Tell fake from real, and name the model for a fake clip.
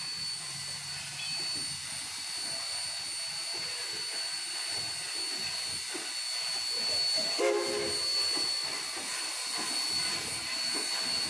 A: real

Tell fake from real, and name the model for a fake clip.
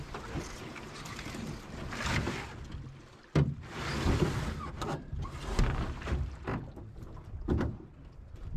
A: real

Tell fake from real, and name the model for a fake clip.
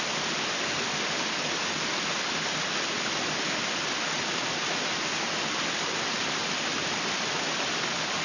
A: real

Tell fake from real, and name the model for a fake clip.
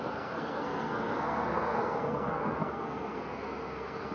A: fake, codec, SNAC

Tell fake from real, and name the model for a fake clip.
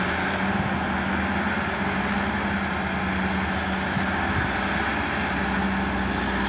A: real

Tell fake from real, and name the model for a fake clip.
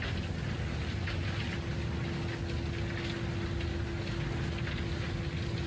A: real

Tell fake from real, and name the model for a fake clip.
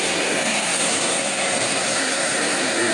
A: fake, codec, SNAC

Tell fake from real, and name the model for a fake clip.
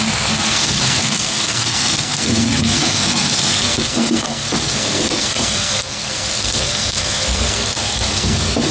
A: fake, codec, SNAC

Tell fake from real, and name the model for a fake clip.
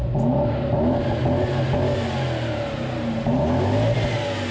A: real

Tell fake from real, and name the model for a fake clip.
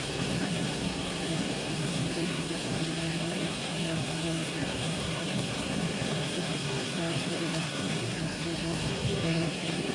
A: fake, codec, SNAC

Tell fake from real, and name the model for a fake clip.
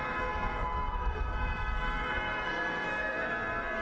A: fake, codec, SNAC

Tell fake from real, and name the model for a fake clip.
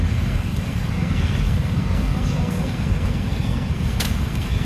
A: fake, codec, SNAC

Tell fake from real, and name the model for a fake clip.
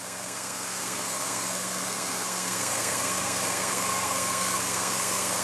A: fake, codec, SNAC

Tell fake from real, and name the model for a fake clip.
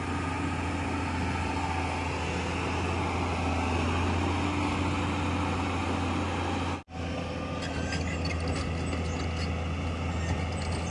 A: real